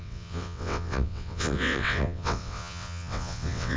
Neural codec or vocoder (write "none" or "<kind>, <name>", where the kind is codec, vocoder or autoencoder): vocoder, WaveNeXt